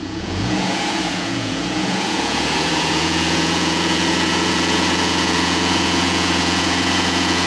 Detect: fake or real fake